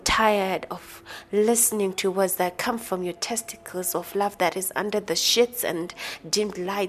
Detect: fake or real real